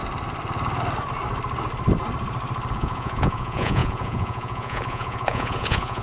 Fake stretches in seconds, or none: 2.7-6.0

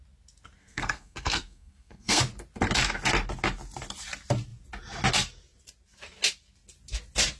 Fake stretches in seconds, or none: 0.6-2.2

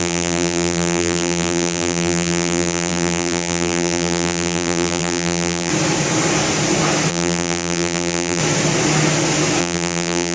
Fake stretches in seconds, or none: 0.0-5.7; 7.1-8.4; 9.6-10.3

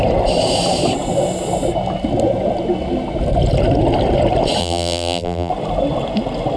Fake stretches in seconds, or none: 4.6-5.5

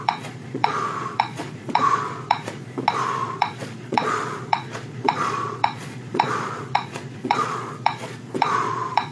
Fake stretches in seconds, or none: 0.0-2.6; 3.2-9.1

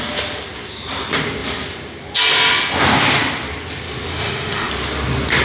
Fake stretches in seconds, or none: 4.1-4.7

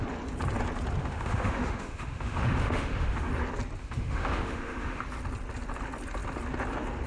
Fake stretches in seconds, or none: 1.0-3.3; 3.8-5.0

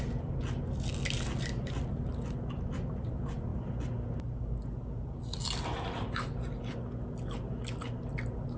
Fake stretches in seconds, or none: none